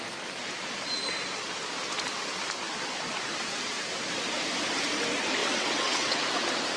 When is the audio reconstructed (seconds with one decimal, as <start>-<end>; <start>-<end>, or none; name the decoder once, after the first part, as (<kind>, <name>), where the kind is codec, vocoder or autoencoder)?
5.4-6.2 (vocoder, WaveNeXt)